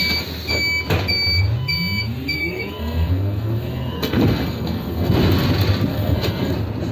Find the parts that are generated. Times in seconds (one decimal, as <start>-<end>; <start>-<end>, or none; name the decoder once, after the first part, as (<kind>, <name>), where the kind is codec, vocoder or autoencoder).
2.4-5.1 (codec, SNAC); 5.9-6.5